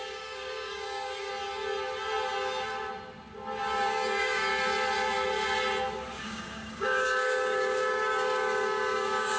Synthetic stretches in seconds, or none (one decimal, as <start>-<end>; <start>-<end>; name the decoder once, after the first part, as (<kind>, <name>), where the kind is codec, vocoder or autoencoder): 0.0-1.3 (codec, DAC); 3.6-4.5; 6.2-9.4

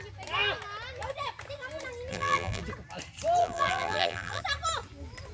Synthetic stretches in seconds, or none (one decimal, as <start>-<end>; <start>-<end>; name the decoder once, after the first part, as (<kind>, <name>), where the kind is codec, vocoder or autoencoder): 2.1-2.6 (vocoder, BigVGAN v2); 3.4-4.4

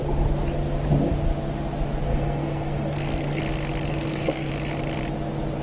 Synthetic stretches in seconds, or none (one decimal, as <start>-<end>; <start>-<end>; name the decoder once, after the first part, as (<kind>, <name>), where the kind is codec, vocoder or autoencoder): 2.1-3.4 (codec, SNAC); 3.9-4.5

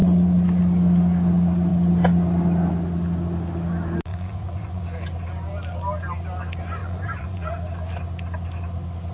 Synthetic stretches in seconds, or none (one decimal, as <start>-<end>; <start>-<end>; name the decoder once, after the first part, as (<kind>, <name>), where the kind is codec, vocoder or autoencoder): 4.1-4.8 (vocoder, Vocos); 6.8-7.5

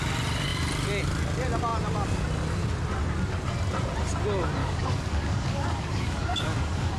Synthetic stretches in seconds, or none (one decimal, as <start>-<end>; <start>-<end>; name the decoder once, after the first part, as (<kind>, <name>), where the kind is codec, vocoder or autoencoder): 4.6-7.0 (codec, DAC)

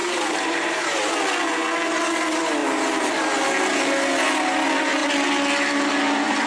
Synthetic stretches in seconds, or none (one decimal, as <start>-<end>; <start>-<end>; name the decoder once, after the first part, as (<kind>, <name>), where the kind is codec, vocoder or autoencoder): 0.0-1.1 (vocoder, BigVGAN v2); 2.6-3.1

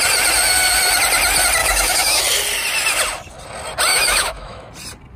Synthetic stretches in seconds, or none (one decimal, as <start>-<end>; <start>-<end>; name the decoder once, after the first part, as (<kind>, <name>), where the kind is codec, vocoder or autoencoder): 1.6-2.2 (autoencoder, DAC-VAE); 3.9-4.7